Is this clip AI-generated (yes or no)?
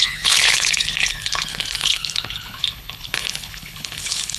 yes